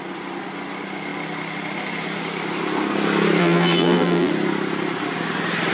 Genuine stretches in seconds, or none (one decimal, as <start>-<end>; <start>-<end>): 0.0-3.4; 4.3-5.7